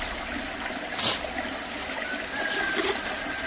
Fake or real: real